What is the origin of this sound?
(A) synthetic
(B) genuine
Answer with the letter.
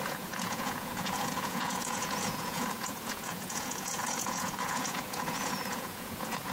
A